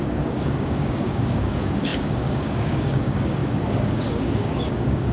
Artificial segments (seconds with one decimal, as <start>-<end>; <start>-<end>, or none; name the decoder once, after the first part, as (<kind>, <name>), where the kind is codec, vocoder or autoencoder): 0.0-5.1 (codec, DAC)